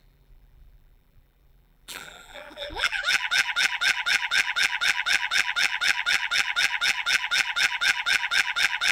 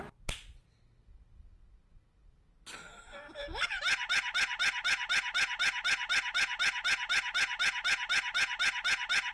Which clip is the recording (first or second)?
second